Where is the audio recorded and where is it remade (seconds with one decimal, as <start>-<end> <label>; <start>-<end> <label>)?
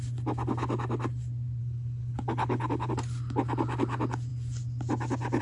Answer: 0.0-1.6 recorded; 1.6-2.9 remade; 2.9-5.4 recorded